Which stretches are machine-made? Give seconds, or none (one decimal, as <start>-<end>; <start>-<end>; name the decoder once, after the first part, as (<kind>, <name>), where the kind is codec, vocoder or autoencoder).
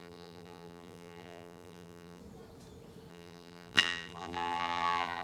0.0-2.2 (vocoder, BigVGAN v2); 3.1-5.2